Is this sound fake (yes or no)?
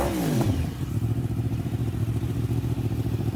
yes